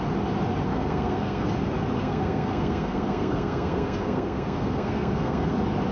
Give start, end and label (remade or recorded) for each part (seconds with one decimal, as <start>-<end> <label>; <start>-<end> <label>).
0.0-0.7 recorded; 0.7-1.5 remade; 1.5-2.0 recorded; 2.0-5.5 remade; 5.5-5.9 recorded